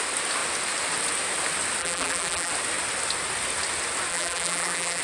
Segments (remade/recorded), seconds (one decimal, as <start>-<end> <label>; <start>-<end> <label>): 0.0-1.8 recorded; 1.8-2.5 remade; 2.5-4.1 recorded; 4.1-5.0 remade